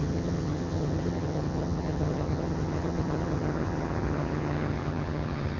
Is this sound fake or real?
fake